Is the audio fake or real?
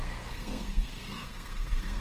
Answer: fake